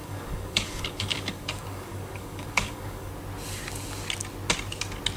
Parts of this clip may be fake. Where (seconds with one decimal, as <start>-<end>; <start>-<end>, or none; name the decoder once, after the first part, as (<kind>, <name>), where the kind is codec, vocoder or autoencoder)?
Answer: 0.0-3.1 (codec, DAC)